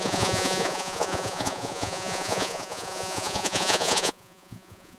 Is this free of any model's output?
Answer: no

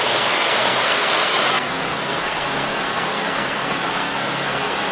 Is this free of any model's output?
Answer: no